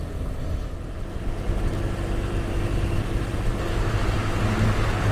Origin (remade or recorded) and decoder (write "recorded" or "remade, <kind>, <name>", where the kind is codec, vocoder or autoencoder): recorded